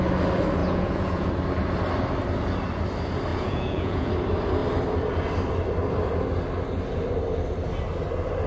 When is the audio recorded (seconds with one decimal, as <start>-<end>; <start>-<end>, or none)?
0.0-0.6; 1.3-3.3; 4.1-8.5